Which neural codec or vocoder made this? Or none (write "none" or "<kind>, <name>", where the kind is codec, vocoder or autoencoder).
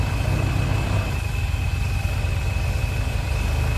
none